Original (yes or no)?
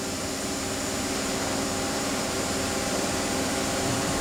no